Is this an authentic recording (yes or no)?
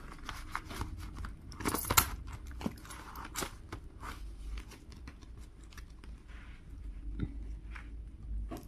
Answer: yes